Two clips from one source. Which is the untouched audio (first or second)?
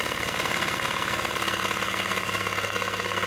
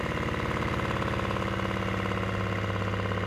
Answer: second